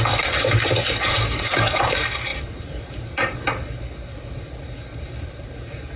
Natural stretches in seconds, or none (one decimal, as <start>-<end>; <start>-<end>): 0.0-6.0